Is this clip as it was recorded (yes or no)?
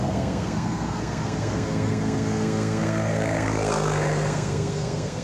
no